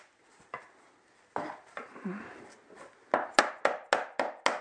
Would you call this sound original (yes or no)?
yes